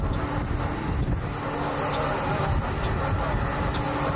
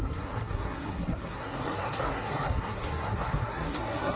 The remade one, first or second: second